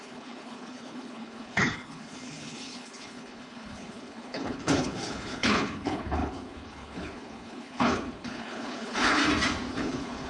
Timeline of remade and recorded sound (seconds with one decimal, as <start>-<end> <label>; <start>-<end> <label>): 0.0-9.2 remade; 9.2-9.7 recorded; 9.7-10.3 remade